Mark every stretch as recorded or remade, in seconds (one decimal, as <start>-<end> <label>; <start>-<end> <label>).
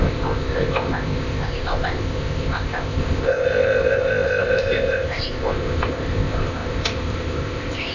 0.0-7.9 remade